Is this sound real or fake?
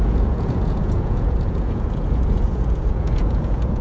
fake